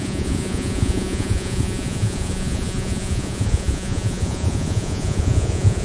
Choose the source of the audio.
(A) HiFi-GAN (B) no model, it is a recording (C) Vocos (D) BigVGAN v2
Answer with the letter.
C